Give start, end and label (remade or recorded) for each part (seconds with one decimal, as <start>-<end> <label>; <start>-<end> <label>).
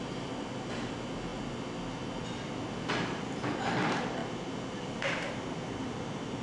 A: 0.0-6.4 recorded